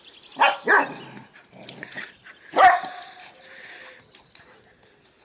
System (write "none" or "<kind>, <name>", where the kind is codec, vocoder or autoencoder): none